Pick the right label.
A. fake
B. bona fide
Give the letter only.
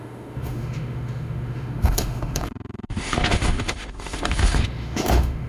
A